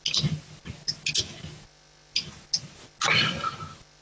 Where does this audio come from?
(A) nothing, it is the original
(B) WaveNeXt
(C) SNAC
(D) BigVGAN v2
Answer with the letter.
A